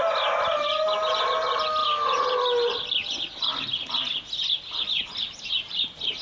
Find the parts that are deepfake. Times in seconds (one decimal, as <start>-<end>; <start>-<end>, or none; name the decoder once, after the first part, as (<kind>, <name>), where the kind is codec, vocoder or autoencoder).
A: none